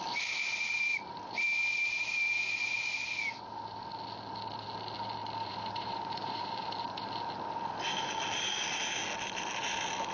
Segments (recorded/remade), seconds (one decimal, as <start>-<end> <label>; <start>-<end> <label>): 0.0-5.2 recorded; 5.2-6.7 remade; 6.7-10.1 recorded